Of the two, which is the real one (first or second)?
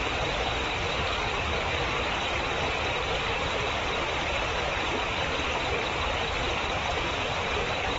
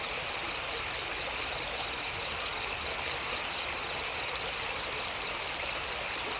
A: second